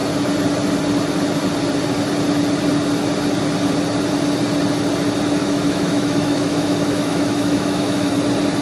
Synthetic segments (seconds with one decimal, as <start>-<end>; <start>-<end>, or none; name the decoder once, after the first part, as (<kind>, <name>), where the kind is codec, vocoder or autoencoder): 5.4-8.1 (autoencoder, DAC-VAE)